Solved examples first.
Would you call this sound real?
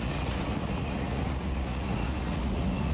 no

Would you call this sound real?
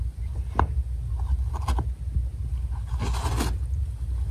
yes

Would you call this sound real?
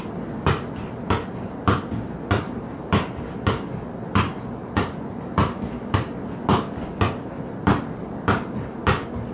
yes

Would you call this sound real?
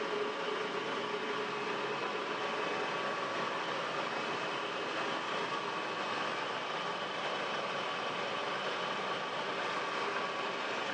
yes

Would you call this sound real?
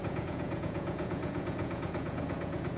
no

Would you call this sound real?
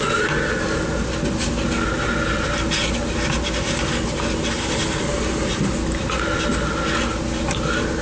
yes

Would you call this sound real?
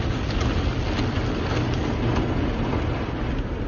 yes